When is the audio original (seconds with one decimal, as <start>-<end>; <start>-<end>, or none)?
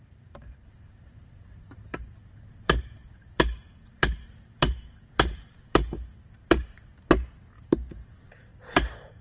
6.9-7.9